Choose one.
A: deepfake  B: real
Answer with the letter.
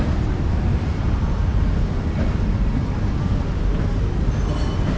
B